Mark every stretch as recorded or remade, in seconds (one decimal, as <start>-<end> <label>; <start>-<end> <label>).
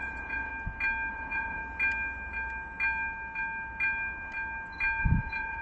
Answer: 0.0-0.5 remade; 0.5-1.1 recorded; 1.1-1.6 remade; 1.6-5.0 recorded; 5.0-5.6 remade